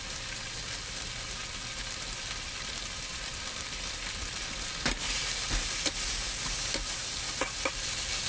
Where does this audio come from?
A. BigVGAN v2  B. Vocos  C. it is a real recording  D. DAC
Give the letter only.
C